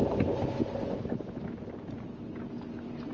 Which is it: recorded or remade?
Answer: recorded